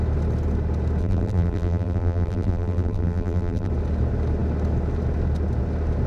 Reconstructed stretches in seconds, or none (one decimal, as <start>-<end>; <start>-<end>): 1.0-3.7